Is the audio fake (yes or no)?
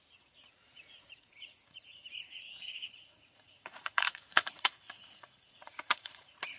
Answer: yes